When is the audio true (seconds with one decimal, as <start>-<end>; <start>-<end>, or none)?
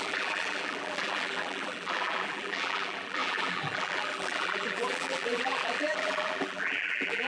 none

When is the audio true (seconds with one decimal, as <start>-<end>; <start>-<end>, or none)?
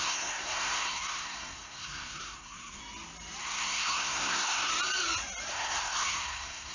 2.8-3.4; 4.7-5.5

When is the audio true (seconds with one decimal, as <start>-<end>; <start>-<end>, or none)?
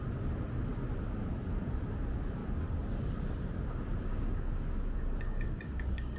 0.0-4.1